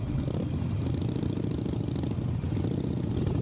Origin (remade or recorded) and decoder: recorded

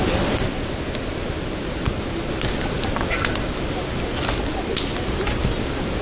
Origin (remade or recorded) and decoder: recorded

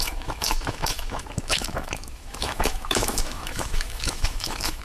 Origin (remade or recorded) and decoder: remade, autoencoder, DAC-VAE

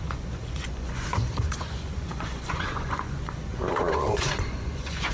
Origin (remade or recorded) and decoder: remade, vocoder, Vocos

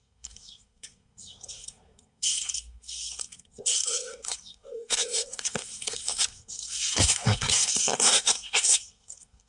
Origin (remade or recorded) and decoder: remade, codec, SNAC